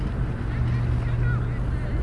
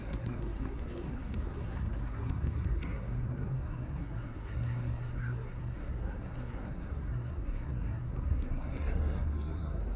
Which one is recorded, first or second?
first